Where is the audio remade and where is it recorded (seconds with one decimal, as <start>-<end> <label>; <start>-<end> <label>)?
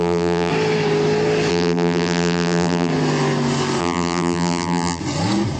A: 0.0-0.5 remade; 0.5-1.5 recorded; 1.5-2.9 remade; 2.9-3.8 recorded; 3.8-5.0 remade; 5.0-5.6 recorded